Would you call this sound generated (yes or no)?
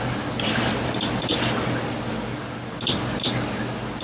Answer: no